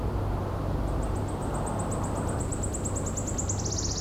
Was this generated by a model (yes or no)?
no